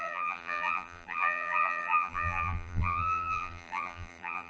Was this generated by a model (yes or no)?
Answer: yes